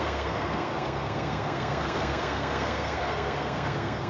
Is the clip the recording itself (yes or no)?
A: no